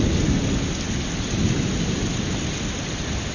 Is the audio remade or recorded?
recorded